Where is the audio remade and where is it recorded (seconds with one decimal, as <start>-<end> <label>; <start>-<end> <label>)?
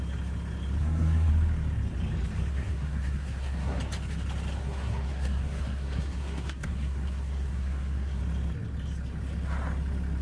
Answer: 0.0-0.8 recorded; 0.8-1.3 remade; 1.3-2.5 recorded; 2.5-3.8 remade; 3.8-4.6 recorded; 4.6-8.2 remade; 8.2-10.2 recorded